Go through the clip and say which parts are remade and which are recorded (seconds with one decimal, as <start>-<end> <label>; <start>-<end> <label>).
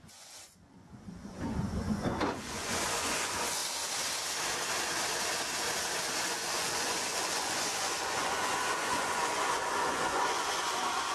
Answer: 0.0-3.6 remade; 3.6-6.3 recorded; 6.3-11.1 remade